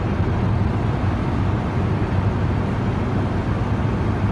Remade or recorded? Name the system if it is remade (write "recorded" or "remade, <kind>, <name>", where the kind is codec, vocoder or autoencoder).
recorded